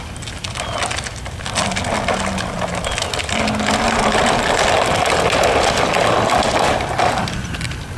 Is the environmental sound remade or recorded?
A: recorded